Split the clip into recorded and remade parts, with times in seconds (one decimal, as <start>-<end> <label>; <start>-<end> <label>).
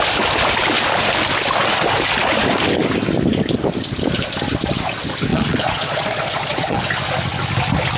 0.0-5.3 recorded; 5.3-6.8 remade; 6.8-8.0 recorded